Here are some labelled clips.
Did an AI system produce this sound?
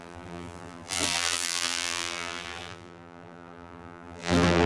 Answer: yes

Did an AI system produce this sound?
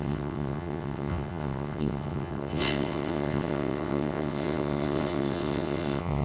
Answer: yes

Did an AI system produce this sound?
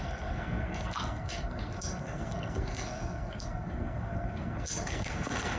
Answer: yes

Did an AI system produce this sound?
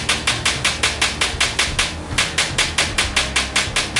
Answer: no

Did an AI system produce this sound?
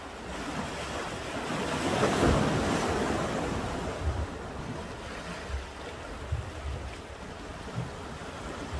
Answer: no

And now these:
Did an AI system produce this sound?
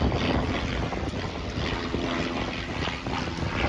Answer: no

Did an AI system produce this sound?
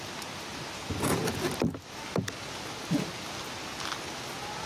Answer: no